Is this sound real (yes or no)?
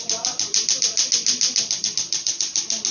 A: yes